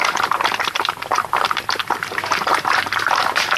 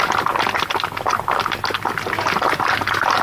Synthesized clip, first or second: first